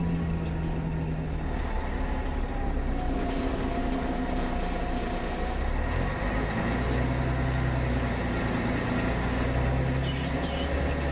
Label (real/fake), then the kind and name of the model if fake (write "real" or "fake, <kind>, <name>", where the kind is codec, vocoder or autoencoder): real